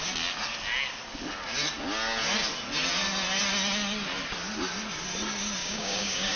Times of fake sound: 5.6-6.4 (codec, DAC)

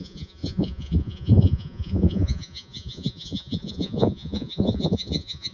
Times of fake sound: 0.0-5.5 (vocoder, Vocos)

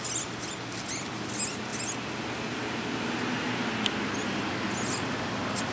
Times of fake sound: none

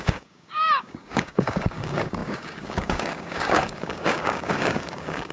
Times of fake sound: 0.0-5.3 (codec, DAC)

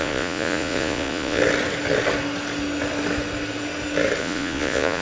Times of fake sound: 0.0-1.4 (vocoder, Vocos); 4.2-5.0